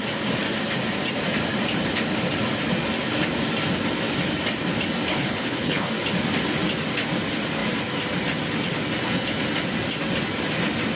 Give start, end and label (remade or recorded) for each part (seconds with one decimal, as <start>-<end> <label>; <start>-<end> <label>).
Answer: 0.0-5.1 recorded; 5.1-5.9 remade; 5.9-11.0 recorded